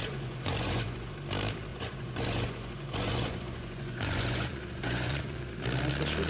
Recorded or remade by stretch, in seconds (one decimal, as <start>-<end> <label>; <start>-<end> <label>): 0.0-1.1 remade; 1.1-1.7 recorded; 1.7-5.5 remade; 5.5-6.3 recorded